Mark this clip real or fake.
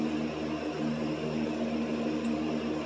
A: real